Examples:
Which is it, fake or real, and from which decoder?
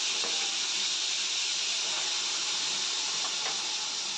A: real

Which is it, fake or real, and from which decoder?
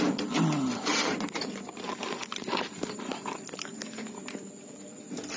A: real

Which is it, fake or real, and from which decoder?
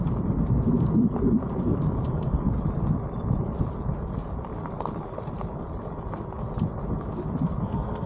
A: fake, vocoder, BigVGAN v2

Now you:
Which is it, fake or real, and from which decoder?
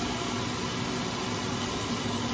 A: real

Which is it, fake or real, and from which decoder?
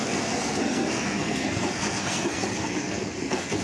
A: fake, codec, SNAC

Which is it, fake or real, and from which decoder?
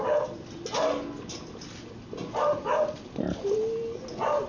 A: real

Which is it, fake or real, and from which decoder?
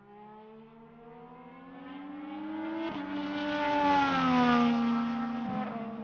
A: real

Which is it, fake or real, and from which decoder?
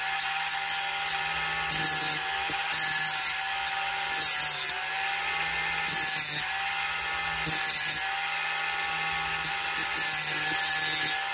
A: real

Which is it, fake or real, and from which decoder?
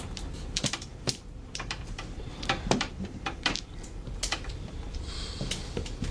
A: fake, vocoder, BigVGAN v2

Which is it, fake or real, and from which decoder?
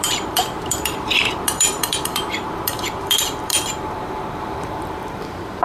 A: fake, vocoder, BigVGAN v2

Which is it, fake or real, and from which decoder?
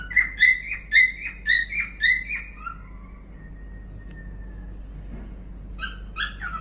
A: real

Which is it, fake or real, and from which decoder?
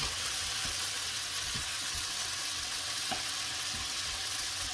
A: fake, vocoder, WaveNeXt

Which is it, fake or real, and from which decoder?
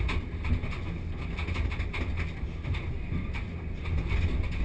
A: real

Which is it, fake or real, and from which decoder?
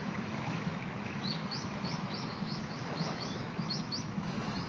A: fake, autoencoder, DAC-VAE